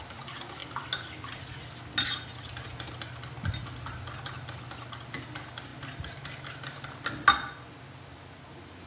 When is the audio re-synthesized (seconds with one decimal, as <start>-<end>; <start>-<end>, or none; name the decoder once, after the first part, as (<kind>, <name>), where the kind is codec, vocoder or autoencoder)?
none